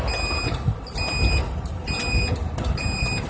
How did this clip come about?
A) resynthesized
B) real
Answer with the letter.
B